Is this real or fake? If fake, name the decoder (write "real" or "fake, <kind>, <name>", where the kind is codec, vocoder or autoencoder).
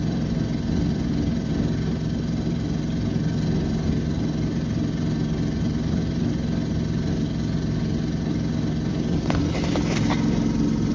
real